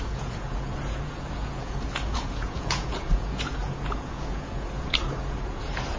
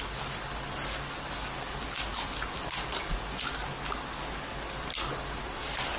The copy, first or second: first